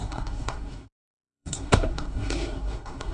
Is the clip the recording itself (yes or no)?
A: no